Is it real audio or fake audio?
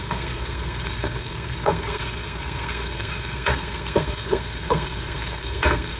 fake